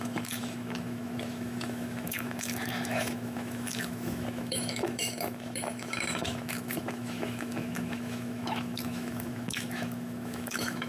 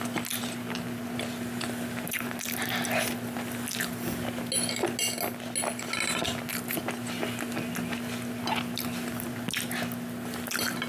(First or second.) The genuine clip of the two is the second